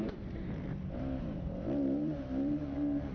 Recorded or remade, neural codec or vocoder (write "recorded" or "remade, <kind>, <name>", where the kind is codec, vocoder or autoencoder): remade, vocoder, BigVGAN v2